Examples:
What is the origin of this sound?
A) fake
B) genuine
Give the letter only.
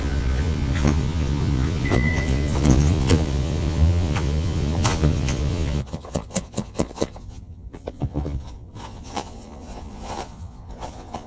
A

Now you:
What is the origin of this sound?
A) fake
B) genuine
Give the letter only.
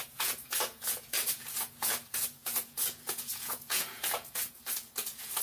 A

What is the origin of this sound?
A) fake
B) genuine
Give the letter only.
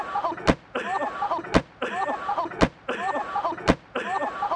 B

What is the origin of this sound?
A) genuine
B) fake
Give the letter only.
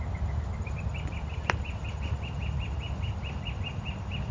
A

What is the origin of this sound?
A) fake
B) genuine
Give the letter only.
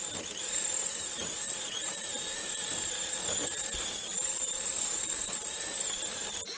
B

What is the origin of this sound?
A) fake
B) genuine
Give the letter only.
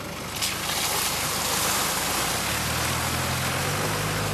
B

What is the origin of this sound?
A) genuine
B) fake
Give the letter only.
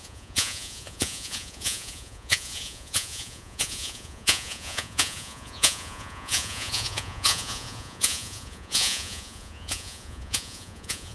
B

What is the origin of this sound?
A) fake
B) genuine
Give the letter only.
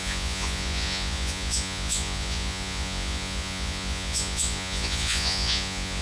A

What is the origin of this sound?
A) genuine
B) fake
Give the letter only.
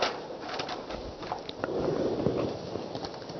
A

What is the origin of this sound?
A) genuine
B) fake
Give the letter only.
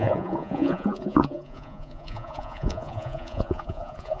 B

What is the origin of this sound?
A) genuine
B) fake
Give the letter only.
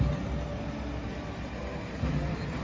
A